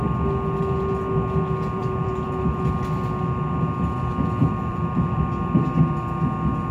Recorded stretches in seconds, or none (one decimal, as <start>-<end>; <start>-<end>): 0.0-1.8; 2.6-4.4; 5.2-6.7